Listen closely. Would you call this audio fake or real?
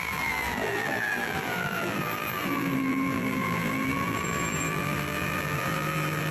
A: fake